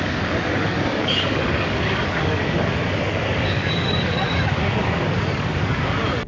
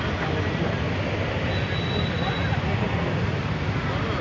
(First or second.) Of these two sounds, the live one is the second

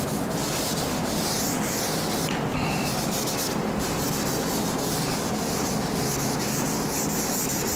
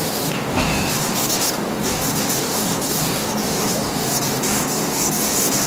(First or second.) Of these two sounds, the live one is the first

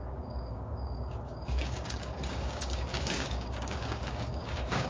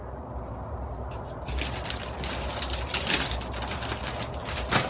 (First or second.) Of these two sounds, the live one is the second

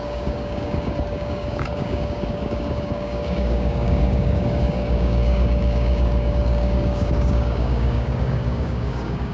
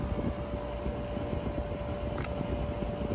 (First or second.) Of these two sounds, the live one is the second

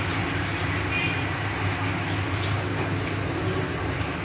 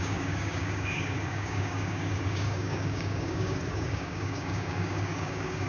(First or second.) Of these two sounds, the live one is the first